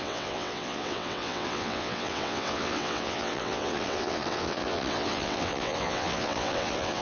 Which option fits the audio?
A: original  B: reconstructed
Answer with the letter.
B